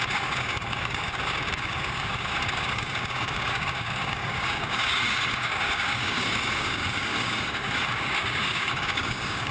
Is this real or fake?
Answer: fake